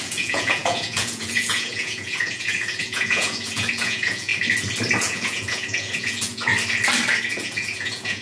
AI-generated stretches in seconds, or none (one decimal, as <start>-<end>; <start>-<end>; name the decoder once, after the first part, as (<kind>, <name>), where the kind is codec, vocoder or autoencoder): 0.0-4.3 (vocoder, Vocos); 5.0-6.5; 7.3-8.2